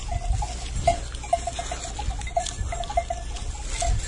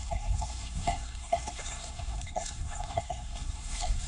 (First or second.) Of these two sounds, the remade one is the second